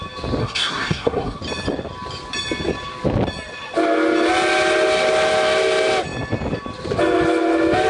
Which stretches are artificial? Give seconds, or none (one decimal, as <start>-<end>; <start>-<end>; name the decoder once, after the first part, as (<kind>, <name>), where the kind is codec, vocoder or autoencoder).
0.4-1.4 (codec, SNAC)